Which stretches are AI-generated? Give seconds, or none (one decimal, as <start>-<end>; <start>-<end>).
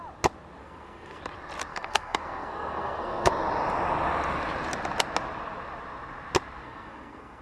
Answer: 0.6-1.2; 1.7-3.3; 6.6-7.4